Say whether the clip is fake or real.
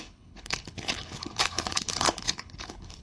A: fake